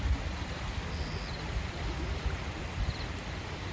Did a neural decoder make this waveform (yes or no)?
no